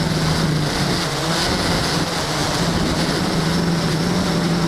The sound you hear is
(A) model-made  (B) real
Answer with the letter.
B